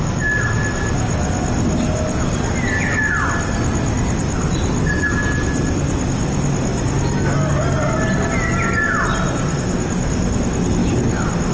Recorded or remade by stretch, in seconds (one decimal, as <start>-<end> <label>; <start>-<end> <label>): 0.0-11.5 recorded